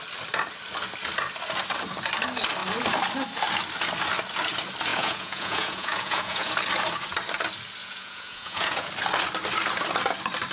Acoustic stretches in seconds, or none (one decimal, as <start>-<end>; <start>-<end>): 0.0-4.9; 6.5-7.8; 8.9-10.5